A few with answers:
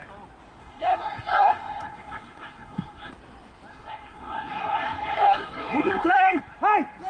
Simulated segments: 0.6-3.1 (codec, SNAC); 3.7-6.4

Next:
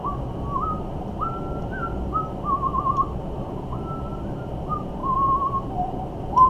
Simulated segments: 3.5-6.5 (vocoder, BigVGAN v2)

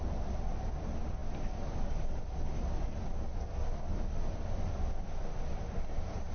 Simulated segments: none

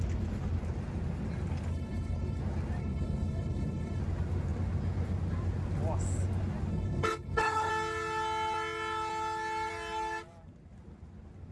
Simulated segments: 1.7-2.4 (codec, HILCodec); 2.8-4.0; 6.7-7.7

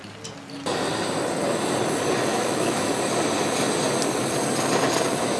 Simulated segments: 2.3-2.8 (autoencoder, DAC-VAE)

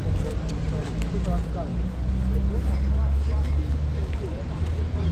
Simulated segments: none